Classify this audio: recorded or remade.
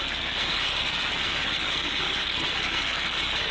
remade